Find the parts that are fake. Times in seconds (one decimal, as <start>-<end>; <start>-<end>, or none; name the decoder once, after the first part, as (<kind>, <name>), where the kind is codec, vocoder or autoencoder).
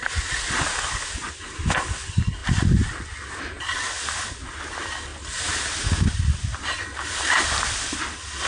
none